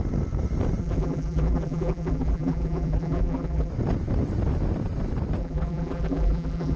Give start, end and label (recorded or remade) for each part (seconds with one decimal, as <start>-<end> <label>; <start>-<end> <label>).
0.0-0.8 recorded; 0.8-3.7 remade; 3.7-5.4 recorded; 5.4-6.8 remade